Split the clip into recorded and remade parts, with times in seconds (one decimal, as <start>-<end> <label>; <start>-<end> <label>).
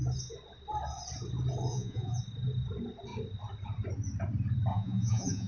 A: 0.0-1.7 recorded; 1.7-2.2 remade; 2.2-4.7 recorded; 4.7-5.5 remade